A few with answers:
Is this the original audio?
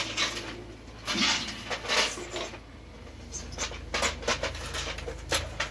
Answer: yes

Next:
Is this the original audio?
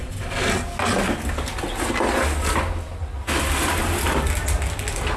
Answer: yes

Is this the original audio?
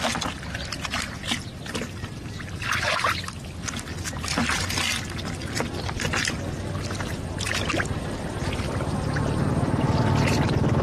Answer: yes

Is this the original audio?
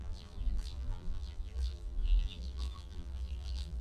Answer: no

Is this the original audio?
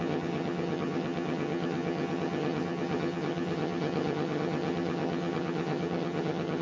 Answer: no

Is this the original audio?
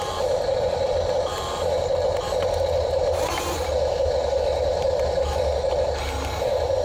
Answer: yes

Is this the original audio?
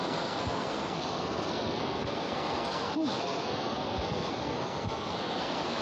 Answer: no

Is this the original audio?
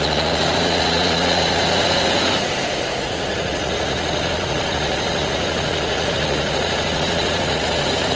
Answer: no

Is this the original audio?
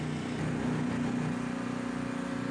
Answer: yes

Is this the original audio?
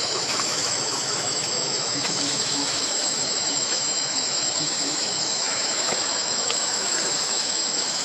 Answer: no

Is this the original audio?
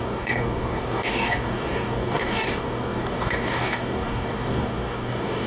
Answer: no